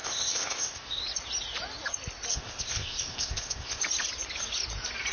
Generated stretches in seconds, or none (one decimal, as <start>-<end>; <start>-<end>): 0.0-1.0; 2.3-3.8